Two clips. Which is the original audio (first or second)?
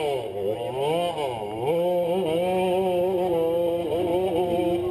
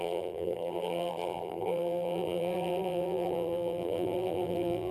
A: first